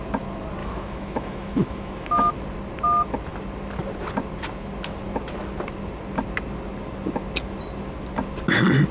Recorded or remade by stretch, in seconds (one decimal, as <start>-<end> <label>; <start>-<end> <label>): 0.0-0.6 recorded; 0.6-2.3 remade; 2.3-8.9 recorded